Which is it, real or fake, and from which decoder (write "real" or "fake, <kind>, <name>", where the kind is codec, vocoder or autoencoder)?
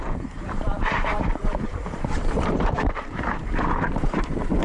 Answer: fake, vocoder, BigVGAN v2